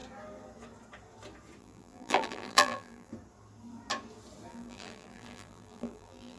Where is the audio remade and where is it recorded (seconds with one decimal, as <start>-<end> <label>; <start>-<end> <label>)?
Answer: 0.0-1.6 recorded; 1.6-3.1 remade; 3.1-4.5 recorded; 4.5-6.4 remade